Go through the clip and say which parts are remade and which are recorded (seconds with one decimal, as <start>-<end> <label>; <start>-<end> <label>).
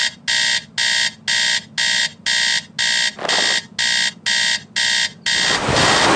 0.0-6.2 recorded